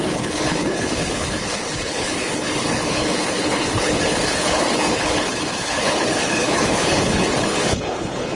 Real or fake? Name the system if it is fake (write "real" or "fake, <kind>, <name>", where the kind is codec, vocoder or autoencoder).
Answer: fake, codec, HILCodec